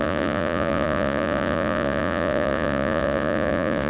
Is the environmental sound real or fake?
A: fake